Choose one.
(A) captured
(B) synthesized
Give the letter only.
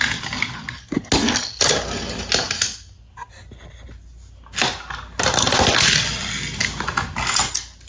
A